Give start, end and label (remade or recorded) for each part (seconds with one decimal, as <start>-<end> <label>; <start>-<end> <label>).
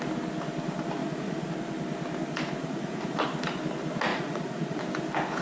0.0-1.0 recorded; 1.0-1.5 remade; 1.5-2.6 recorded; 2.6-3.3 remade; 3.3-4.1 recorded; 4.1-4.8 remade; 4.8-5.4 recorded